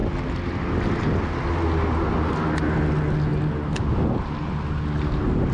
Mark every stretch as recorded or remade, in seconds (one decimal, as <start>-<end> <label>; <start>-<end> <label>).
0.0-5.5 recorded